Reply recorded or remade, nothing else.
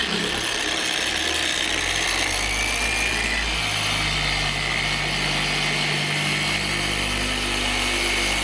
recorded